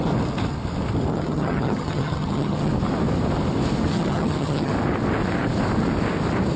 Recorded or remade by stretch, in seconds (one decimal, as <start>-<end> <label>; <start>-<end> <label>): 0.0-1.1 recorded; 1.1-2.7 remade; 2.7-3.9 recorded; 3.9-4.7 remade; 4.7-6.6 recorded